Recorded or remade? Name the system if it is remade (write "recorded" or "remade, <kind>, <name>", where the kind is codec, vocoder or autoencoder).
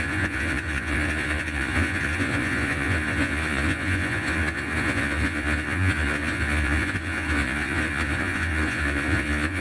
remade, vocoder, Vocos